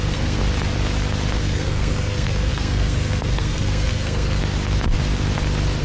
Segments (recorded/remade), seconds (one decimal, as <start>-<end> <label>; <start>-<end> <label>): 0.0-0.4 remade; 0.4-1.4 recorded; 1.4-4.4 remade; 4.4-5.8 recorded